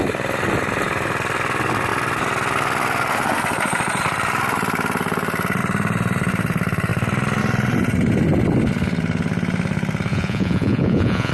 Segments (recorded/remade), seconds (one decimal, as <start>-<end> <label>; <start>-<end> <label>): 0.0-10.1 recorded; 10.1-11.3 remade